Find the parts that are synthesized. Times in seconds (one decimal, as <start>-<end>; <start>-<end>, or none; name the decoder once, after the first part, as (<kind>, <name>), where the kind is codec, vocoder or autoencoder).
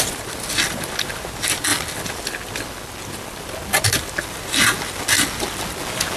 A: none